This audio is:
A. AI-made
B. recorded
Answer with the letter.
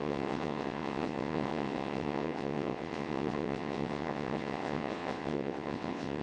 A